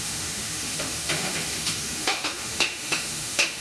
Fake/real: fake